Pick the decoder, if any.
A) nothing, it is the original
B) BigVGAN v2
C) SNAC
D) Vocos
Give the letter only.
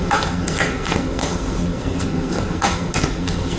C